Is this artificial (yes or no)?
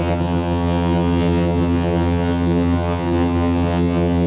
yes